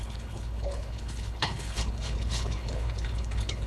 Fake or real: fake